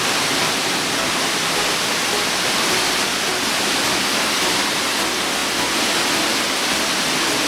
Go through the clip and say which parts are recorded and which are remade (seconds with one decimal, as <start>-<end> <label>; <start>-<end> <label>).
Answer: 0.0-7.5 recorded